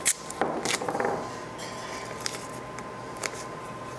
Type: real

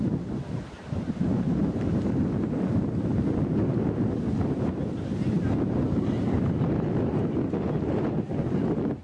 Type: real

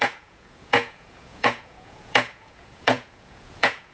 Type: fake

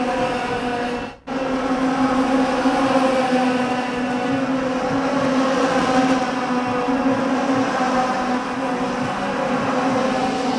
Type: real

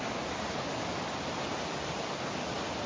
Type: real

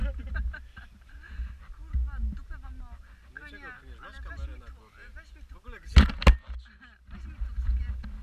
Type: real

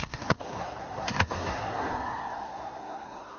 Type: fake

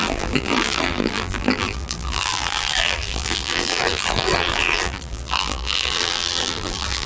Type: fake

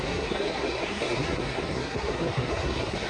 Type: fake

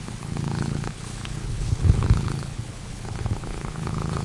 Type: fake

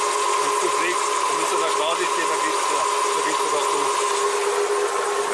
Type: real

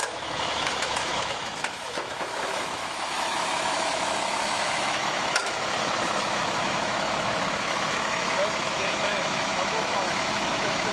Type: fake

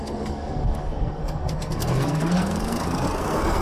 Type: fake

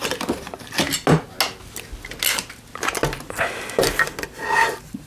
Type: real